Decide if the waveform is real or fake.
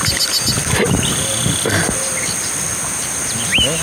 real